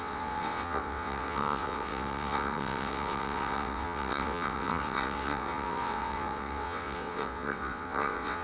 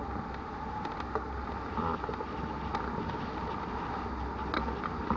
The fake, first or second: first